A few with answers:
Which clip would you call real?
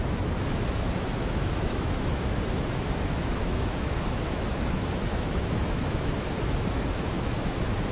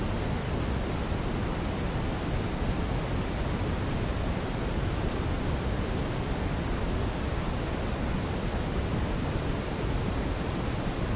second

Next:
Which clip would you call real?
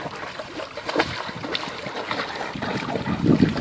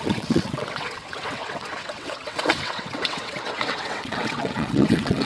first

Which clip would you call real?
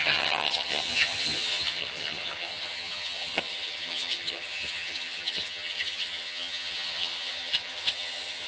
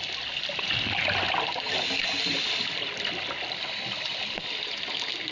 second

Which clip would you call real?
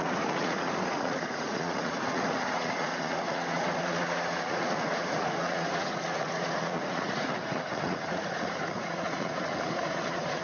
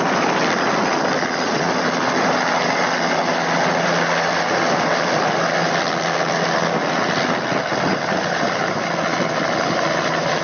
second